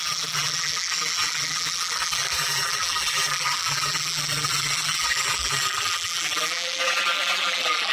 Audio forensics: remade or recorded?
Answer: remade